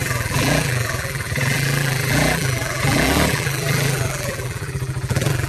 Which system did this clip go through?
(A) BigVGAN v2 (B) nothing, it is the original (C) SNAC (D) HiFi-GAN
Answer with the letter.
A